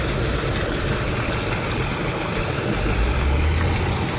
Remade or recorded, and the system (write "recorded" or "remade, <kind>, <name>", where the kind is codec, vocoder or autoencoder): recorded